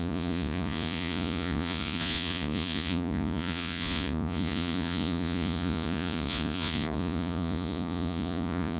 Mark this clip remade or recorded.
remade